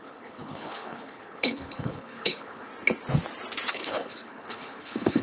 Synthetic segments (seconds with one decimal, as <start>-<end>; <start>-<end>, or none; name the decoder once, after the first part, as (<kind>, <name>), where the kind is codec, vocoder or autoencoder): 0.0-2.7 (codec, HILCodec); 3.7-5.2